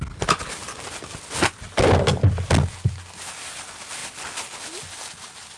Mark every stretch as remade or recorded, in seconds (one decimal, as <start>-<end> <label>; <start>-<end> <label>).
0.0-5.6 recorded